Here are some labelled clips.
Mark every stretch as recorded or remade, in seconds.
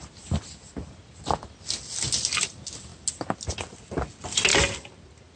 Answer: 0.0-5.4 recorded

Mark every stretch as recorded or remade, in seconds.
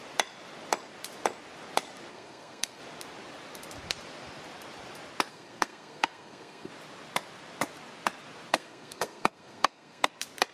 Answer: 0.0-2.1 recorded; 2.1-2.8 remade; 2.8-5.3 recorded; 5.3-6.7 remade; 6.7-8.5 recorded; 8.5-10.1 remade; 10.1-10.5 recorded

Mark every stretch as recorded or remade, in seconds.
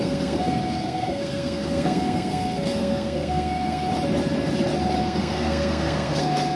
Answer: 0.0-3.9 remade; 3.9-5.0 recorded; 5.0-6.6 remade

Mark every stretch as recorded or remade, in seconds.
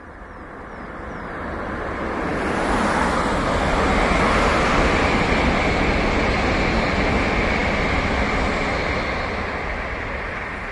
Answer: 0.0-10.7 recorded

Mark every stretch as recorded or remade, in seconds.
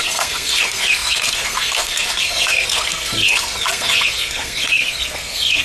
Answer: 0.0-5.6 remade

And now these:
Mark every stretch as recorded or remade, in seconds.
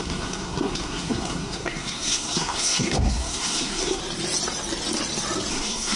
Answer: 0.0-4.0 remade; 4.0-5.5 recorded; 5.5-6.0 remade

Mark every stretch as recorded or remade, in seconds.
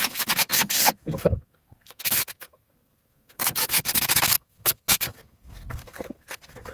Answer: 0.0-6.7 remade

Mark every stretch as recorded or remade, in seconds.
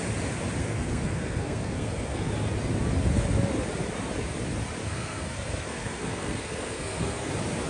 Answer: 0.0-0.6 recorded; 0.6-2.3 remade; 2.3-4.8 recorded; 4.8-7.3 remade; 7.3-7.7 recorded